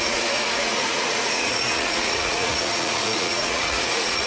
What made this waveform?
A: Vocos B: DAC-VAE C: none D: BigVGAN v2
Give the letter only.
A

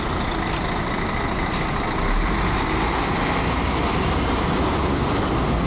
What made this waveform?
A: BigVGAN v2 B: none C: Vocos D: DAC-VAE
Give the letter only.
B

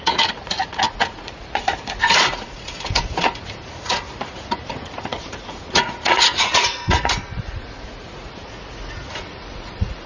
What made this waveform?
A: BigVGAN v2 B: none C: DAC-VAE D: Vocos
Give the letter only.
D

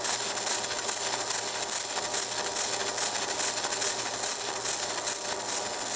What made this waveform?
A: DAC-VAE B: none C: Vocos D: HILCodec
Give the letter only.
B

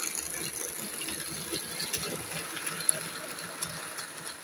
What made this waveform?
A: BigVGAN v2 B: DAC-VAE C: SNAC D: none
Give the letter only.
D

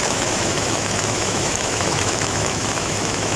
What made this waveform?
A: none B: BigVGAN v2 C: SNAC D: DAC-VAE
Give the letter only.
D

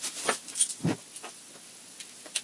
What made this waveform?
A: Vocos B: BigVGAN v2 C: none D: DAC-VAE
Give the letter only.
C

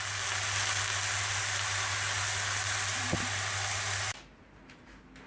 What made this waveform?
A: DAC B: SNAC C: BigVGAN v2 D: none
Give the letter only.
D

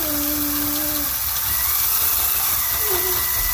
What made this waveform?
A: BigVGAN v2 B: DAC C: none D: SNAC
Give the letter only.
C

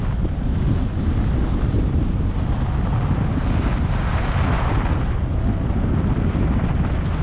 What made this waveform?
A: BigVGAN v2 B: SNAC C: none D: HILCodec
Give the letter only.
C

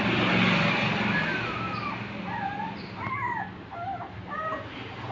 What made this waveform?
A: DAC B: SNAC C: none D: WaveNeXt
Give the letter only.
C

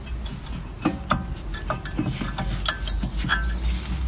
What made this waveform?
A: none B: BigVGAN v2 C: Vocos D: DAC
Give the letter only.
A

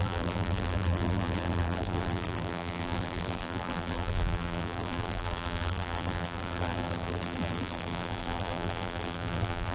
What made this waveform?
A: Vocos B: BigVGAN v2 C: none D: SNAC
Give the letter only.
B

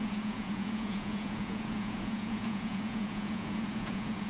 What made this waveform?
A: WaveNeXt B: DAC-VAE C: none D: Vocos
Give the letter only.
D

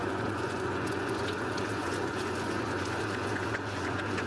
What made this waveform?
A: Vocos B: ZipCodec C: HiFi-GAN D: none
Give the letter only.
A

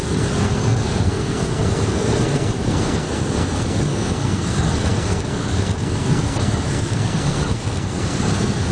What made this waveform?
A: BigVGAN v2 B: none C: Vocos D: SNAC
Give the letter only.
D